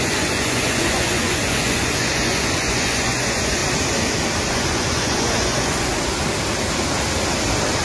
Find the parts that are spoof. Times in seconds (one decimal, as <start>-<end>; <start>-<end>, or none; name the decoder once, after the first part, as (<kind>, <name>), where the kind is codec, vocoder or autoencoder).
0.0-3.6 (vocoder, Vocos); 4.5-5.9

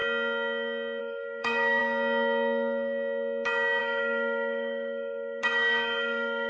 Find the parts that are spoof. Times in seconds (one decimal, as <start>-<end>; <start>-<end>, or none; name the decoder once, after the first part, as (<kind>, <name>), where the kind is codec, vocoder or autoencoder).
1.0-1.8 (autoencoder, DAC-VAE); 3.8-6.5

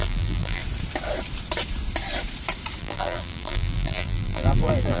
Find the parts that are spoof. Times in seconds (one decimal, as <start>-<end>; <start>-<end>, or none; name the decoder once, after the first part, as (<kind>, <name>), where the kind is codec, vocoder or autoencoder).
0.0-0.6 (vocoder, BigVGAN v2); 2.8-5.0

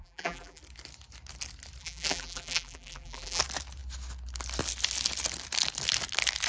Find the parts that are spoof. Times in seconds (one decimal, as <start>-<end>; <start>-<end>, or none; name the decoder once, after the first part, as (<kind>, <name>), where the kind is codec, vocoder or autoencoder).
0.0-0.6 (vocoder, BigVGAN v2); 1.8-3.4

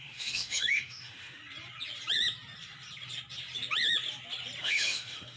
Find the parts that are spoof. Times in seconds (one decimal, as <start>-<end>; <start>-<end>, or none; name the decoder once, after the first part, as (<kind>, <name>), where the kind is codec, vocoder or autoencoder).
0.0-1.4 (autoencoder, DAC-VAE); 4.6-5.4

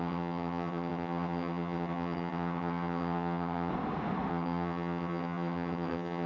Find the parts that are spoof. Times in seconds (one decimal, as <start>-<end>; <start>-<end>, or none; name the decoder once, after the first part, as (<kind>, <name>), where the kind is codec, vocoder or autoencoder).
0.0-3.7 (vocoder, HiFi-GAN); 4.3-6.3